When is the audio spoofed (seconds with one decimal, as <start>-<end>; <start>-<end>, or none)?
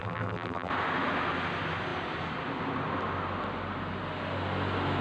0.0-0.7